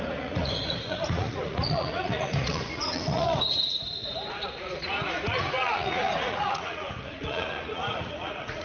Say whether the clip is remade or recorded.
remade